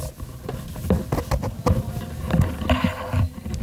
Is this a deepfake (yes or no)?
no